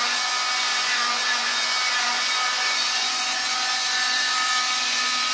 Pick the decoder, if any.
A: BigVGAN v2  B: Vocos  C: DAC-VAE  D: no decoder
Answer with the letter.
B